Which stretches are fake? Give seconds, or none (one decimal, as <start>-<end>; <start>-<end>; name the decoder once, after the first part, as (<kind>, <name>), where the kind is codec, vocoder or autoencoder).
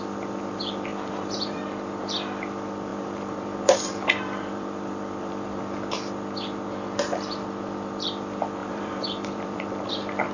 0.9-1.6 (vocoder, BigVGAN v2); 2.9-5.6; 8.6-9.9